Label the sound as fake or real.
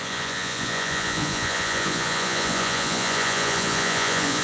fake